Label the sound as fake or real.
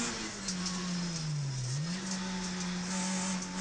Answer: real